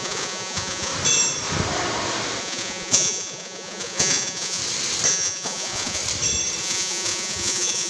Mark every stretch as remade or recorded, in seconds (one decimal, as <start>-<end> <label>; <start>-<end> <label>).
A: 0.0-0.9 remade; 0.9-2.4 recorded; 2.4-4.6 remade; 4.6-5.1 recorded; 5.1-6.0 remade; 6.0-6.6 recorded; 6.6-7.9 remade